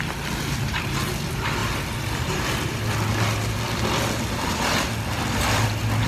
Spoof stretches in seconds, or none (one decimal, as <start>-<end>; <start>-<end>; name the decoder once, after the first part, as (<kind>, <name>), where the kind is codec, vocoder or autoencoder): none